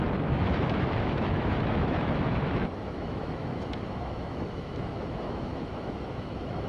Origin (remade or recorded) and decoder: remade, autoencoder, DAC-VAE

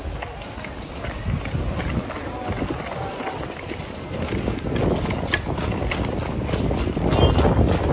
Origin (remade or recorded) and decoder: recorded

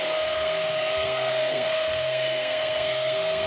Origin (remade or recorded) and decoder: remade, codec, SNAC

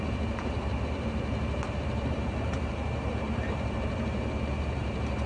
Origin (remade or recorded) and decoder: remade, vocoder, BigVGAN v2